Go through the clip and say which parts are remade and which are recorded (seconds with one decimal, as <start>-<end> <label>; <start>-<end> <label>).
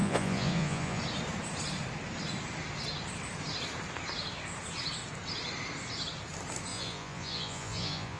0.0-1.0 remade; 1.0-6.7 recorded; 6.7-8.2 remade